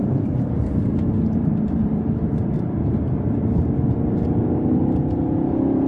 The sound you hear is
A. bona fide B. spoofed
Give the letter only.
B